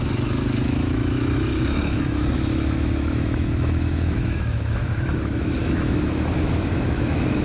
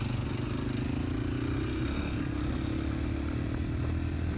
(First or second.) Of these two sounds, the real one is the second